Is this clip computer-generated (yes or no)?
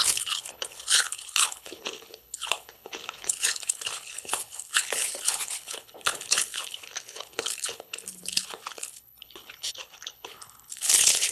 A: yes